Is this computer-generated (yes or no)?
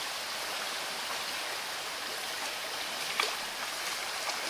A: no